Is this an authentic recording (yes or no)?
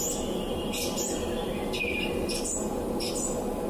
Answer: yes